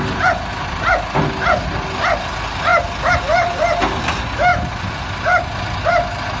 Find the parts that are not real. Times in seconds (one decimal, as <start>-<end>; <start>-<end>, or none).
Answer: none